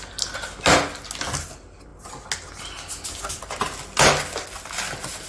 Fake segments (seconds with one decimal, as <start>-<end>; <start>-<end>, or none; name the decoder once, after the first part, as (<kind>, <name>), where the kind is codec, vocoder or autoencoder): none